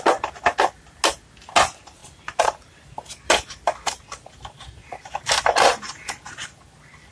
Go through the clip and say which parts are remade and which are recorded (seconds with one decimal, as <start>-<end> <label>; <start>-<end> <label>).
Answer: 0.0-7.1 recorded